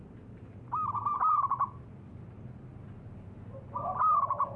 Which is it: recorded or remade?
recorded